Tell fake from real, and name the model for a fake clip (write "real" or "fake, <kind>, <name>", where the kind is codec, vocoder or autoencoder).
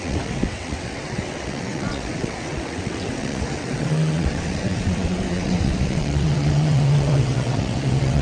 fake, vocoder, WaveNeXt